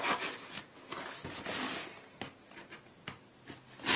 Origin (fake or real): real